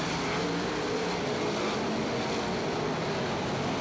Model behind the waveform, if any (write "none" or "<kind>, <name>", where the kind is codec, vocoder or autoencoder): none